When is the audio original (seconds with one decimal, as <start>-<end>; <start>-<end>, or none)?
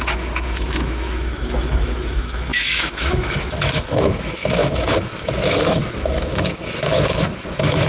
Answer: none